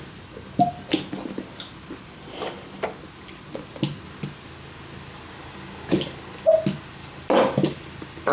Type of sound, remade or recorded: recorded